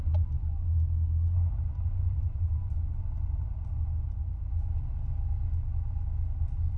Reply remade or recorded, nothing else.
recorded